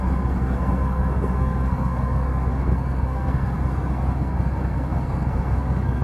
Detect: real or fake fake